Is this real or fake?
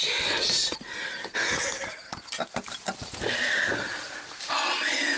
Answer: real